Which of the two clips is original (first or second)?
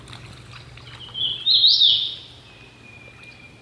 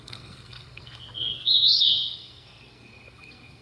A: first